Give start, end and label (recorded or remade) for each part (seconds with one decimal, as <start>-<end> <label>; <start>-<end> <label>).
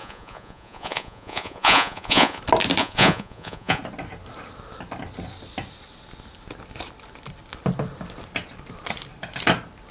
0.0-2.4 remade; 2.4-2.8 recorded; 2.8-3.8 remade; 3.8-9.9 recorded